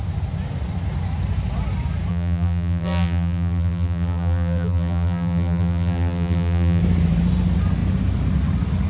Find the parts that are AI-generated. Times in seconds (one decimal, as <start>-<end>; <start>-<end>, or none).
2.1-6.8